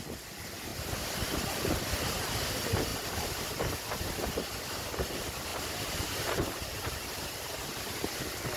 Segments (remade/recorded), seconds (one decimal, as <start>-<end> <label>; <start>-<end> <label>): 0.0-5.5 recorded; 5.5-8.0 remade; 8.0-8.6 recorded